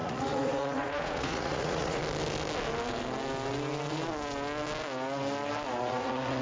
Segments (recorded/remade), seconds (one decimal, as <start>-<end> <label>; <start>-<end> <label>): 0.0-2.0 remade; 2.0-5.8 recorded; 5.8-6.4 remade